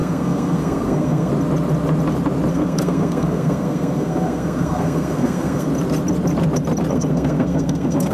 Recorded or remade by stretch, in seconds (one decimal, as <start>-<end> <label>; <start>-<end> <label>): 0.0-1.3 remade; 1.3-2.5 recorded; 2.5-5.7 remade; 5.7-6.9 recorded; 6.9-8.1 remade

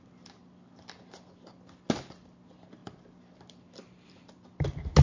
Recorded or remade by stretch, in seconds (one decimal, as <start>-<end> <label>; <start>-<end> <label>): 0.0-5.0 recorded

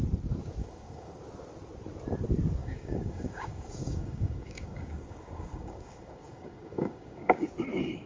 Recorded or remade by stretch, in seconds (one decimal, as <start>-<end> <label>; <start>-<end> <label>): 0.0-0.6 recorded; 0.6-1.2 remade; 1.2-2.6 recorded; 2.6-7.5 remade; 7.5-8.1 recorded

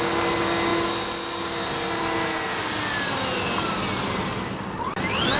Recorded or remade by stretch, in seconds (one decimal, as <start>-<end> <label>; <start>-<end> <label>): 0.0-5.4 recorded

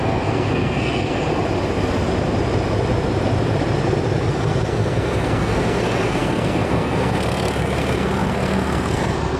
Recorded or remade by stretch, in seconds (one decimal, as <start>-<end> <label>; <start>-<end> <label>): 0.0-1.3 remade; 1.3-4.3 recorded; 4.3-9.4 remade

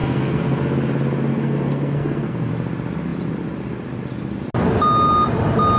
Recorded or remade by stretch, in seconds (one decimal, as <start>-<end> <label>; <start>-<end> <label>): 0.0-0.6 remade; 0.6-1.3 recorded; 1.3-2.5 remade; 2.5-5.8 recorded

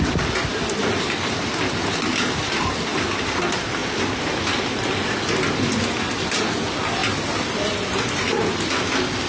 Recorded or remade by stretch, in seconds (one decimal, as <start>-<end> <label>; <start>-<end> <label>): 0.0-9.3 recorded